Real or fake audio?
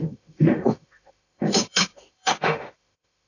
fake